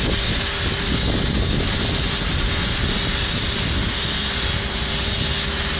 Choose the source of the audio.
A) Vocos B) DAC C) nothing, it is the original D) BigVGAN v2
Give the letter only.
C